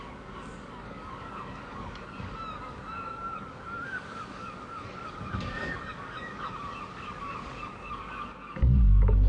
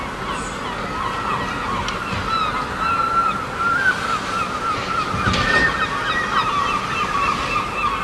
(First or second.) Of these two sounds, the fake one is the first